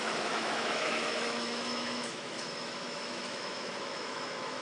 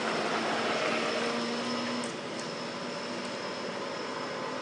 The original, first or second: second